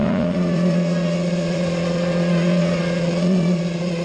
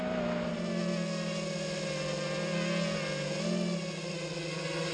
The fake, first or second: first